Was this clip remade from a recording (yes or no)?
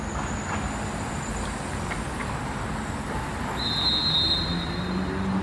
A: no